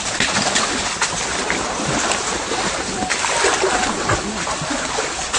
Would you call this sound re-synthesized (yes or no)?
no